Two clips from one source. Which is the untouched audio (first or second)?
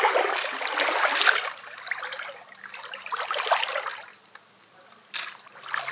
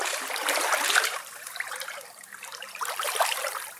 first